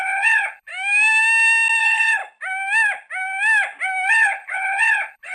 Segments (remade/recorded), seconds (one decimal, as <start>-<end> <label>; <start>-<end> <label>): 0.0-0.7 remade; 0.7-1.8 recorded; 1.8-2.2 remade; 2.2-4.1 recorded; 4.1-5.3 remade